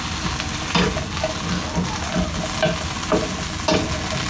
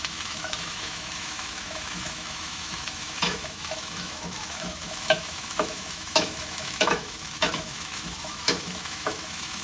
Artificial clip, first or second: second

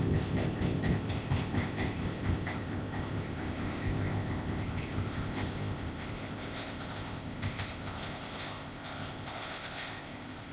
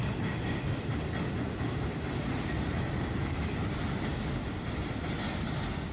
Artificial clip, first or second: first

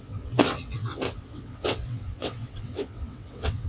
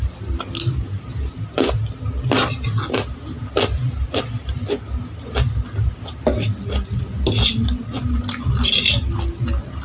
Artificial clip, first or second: first